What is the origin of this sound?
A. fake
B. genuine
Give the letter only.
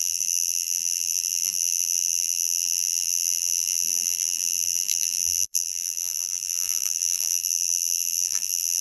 A